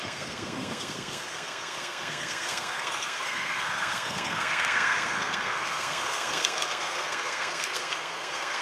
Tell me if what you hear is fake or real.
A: fake